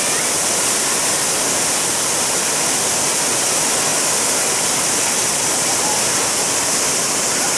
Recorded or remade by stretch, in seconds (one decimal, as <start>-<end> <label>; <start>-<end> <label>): 0.0-7.6 recorded